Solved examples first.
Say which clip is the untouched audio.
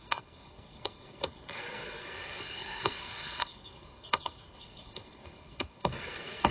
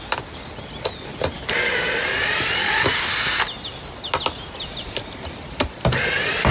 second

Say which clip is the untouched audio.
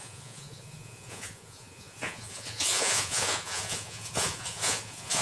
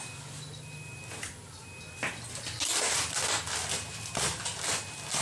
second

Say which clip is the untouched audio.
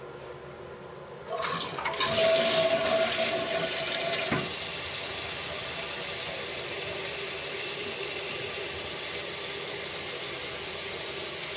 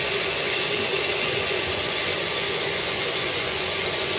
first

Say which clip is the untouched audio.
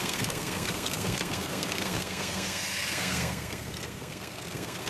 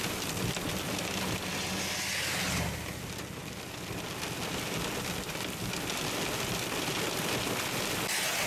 second